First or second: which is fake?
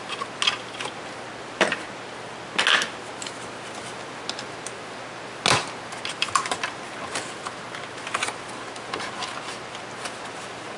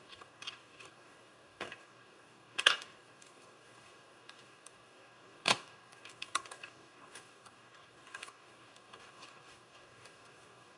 second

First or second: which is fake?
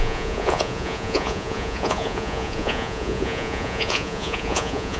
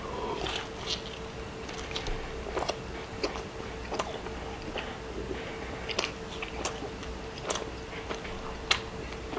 first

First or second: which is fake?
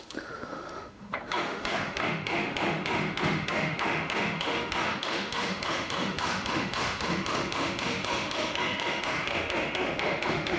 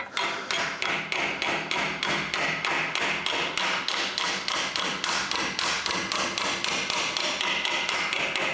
first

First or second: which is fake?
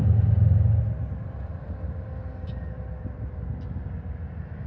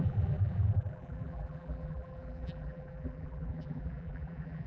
second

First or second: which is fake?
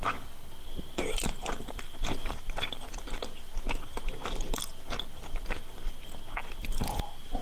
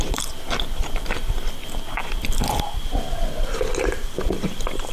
second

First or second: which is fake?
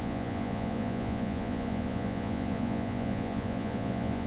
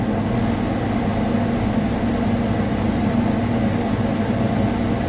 first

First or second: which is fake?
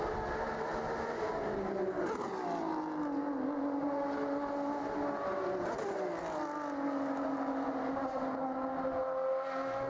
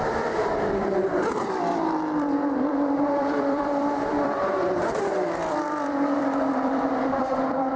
second